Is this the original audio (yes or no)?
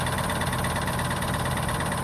no